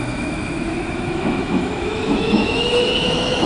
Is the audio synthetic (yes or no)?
yes